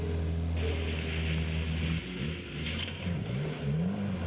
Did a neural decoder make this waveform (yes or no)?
no